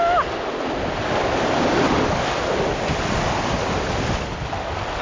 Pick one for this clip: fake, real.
real